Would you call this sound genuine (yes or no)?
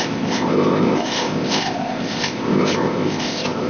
no